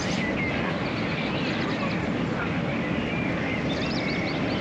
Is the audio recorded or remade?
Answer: recorded